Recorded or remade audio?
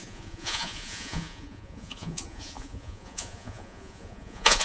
remade